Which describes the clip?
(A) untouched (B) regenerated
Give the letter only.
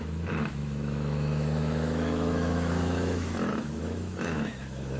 B